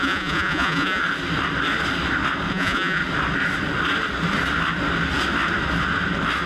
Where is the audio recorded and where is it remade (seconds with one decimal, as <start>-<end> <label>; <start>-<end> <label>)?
0.0-1.0 remade; 1.0-2.5 recorded; 2.5-3.0 remade; 3.0-6.5 recorded